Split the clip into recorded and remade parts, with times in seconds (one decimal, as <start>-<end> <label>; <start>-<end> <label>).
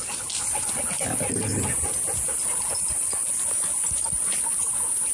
0.0-1.5 remade; 1.5-2.3 recorded; 2.3-3.2 remade; 3.2-4.0 recorded; 4.0-5.1 remade